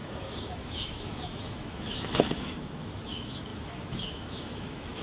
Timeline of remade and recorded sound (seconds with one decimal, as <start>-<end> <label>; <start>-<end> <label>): 0.0-5.0 remade

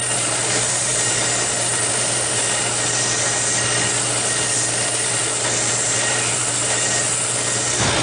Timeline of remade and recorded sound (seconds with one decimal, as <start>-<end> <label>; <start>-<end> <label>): 0.0-8.0 recorded

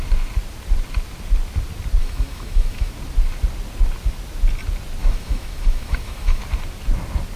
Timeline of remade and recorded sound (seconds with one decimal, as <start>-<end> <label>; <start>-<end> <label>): 0.0-2.0 recorded; 2.0-2.9 remade; 2.9-5.0 recorded; 5.0-6.4 remade; 6.4-7.4 recorded